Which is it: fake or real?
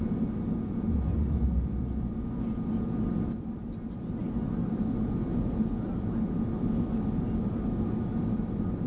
real